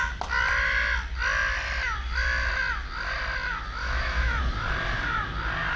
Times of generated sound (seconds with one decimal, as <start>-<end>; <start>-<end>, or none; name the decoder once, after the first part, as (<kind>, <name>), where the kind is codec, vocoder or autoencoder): 3.8-4.4 (autoencoder, DAC-VAE)